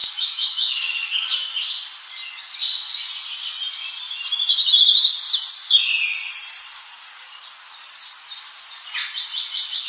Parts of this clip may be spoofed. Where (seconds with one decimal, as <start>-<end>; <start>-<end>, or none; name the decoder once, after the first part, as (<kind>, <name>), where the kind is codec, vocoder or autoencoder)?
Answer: 0.0-1.5 (codec, DAC)